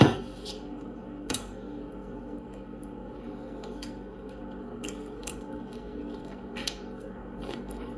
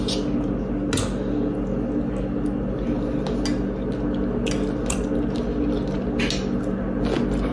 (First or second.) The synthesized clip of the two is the first